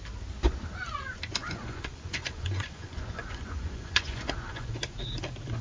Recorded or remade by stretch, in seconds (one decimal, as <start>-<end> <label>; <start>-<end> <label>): 0.0-1.4 recorded; 1.4-4.7 remade; 4.7-5.6 recorded